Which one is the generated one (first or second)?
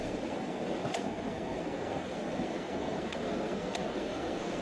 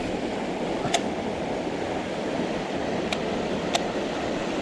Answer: first